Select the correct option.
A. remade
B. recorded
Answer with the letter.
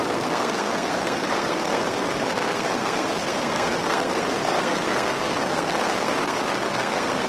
A